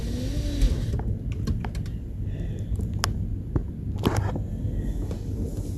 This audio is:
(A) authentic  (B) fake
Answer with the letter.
A